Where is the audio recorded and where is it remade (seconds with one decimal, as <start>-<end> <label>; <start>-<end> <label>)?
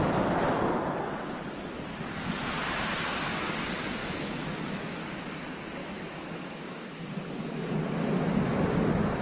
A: 0.0-4.0 recorded; 4.0-5.2 remade; 5.2-5.8 recorded; 5.8-7.0 remade; 7.0-9.2 recorded